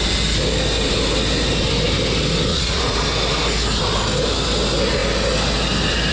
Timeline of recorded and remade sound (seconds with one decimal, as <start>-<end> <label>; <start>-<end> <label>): 0.0-2.5 recorded; 2.5-3.0 remade; 3.0-6.1 recorded